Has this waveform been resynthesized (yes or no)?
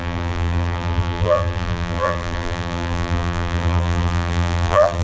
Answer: yes